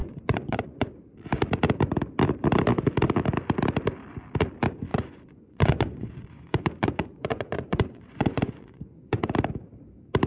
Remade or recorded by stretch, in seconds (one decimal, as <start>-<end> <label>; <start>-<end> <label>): 0.0-0.9 remade; 0.9-4.9 recorded; 4.9-9.3 remade; 9.3-10.3 recorded